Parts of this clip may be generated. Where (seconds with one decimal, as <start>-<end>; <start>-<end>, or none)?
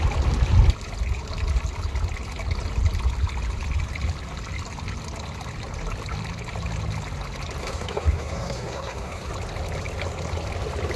7.6-9.3